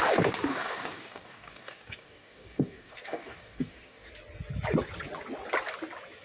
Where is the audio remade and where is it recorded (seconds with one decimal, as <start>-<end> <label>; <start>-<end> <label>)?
0.0-0.5 recorded; 0.5-4.1 remade; 4.1-6.2 recorded